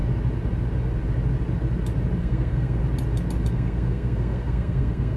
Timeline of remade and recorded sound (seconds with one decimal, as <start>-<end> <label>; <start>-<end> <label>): 0.0-2.2 recorded; 2.2-2.8 remade; 2.8-3.5 recorded; 3.5-5.2 remade